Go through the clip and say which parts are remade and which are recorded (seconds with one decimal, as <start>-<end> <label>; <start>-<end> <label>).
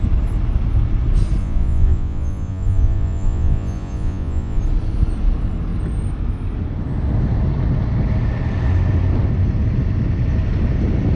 0.0-1.4 recorded; 1.4-4.6 remade; 4.6-11.2 recorded